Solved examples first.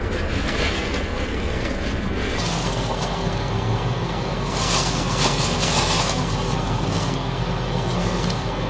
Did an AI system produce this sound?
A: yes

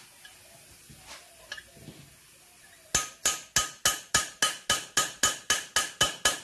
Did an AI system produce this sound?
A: no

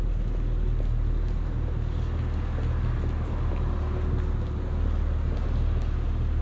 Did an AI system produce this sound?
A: no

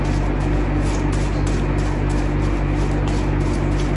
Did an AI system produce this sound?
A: no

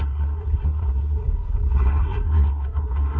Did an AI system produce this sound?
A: yes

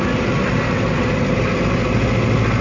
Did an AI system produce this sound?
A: no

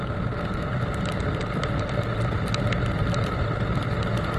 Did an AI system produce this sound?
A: no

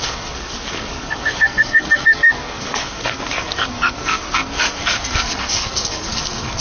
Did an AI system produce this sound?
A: yes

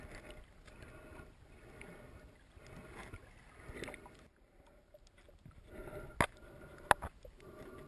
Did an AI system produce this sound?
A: no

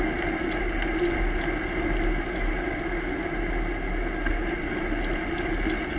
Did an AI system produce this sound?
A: no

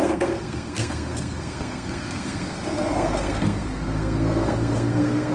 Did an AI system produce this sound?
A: yes